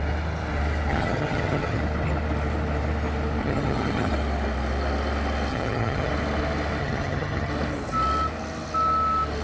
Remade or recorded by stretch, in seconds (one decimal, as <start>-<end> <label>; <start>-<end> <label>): 0.0-0.9 recorded; 0.9-1.8 remade; 1.8-3.4 recorded; 3.4-4.1 remade; 4.1-5.5 recorded; 5.5-6.1 remade; 6.1-6.8 recorded; 6.8-7.5 remade; 7.5-9.4 recorded